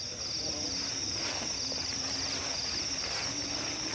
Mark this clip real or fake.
real